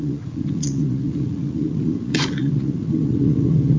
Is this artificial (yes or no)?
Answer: yes